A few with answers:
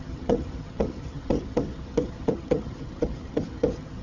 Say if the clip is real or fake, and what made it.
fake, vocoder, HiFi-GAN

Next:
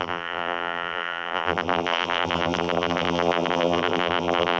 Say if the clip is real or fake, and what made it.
fake, vocoder, BigVGAN v2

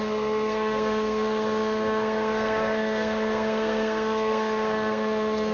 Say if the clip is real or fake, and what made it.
fake, codec, SNAC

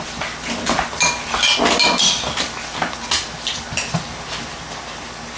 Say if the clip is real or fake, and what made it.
real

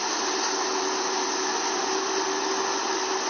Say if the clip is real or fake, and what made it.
real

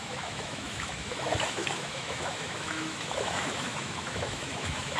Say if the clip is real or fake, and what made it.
fake, autoencoder, DAC-VAE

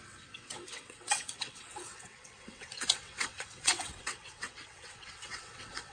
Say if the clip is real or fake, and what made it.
fake, vocoder, WaveNeXt